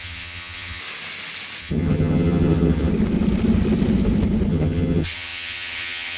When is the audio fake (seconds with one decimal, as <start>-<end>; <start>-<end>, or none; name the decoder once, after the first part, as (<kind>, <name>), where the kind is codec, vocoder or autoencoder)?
0.0-0.8 (vocoder, HiFi-GAN); 1.6-2.9; 4.5-6.2